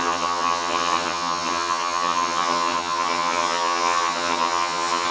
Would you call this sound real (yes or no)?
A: no